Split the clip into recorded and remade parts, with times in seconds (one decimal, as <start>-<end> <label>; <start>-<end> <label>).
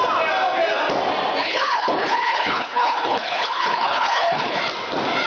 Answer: 0.0-1.4 recorded; 1.4-4.6 remade; 4.6-5.3 recorded